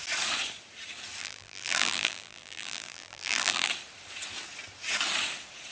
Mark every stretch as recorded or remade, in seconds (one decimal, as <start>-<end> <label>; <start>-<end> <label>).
0.0-1.2 recorded; 1.2-3.7 remade; 3.7-5.7 recorded

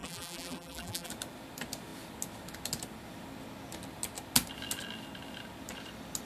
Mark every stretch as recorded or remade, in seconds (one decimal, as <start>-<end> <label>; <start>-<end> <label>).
0.0-1.1 remade; 1.1-6.3 recorded

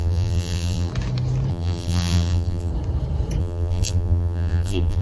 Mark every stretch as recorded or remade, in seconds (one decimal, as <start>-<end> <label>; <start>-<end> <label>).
0.0-0.9 remade; 0.9-1.5 recorded; 1.5-2.7 remade; 2.7-3.4 recorded; 3.4-5.0 remade